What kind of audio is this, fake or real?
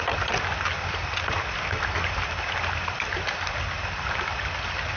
real